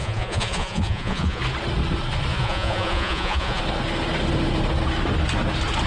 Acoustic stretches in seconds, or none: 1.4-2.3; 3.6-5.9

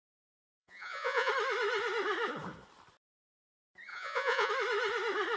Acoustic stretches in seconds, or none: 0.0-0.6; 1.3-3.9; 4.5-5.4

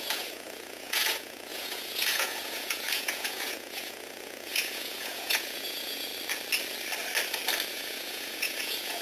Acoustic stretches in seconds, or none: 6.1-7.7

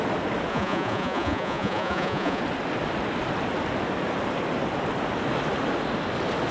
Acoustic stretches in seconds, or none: 0.0-0.5; 2.4-6.5

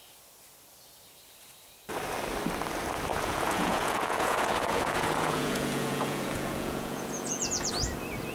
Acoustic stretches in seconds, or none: 0.0-3.1; 7.7-8.3

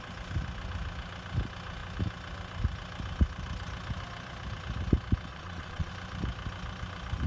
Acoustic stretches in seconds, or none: 0.0-5.3; 5.9-7.3

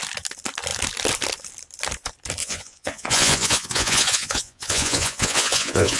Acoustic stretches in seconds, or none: 0.0-2.4

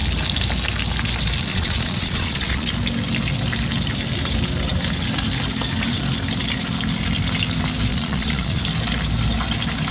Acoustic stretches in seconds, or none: 0.0-1.5; 2.7-7.9; 8.6-9.9